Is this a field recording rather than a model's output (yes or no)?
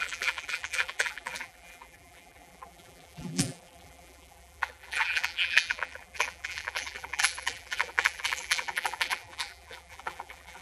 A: no